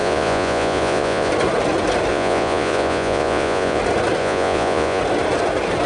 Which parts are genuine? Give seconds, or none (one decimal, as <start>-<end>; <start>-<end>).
1.3-2.1; 3.8-4.2; 5.0-5.9